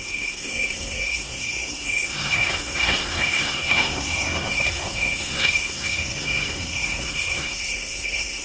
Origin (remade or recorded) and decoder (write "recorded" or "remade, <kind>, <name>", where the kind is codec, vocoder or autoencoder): remade, codec, SNAC